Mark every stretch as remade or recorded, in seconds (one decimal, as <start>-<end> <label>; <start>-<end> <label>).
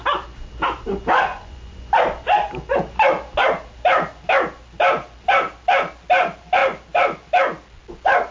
0.0-1.3 recorded; 1.3-1.9 remade; 1.9-8.3 recorded